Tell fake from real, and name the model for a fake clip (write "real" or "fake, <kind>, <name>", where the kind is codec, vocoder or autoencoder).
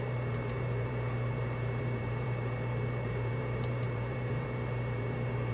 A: fake, vocoder, BigVGAN v2